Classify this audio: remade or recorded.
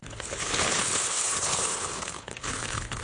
remade